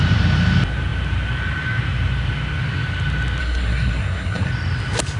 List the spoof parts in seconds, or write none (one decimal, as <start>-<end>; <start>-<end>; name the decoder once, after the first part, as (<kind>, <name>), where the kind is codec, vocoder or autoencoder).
3.4-4.5 (codec, SNAC)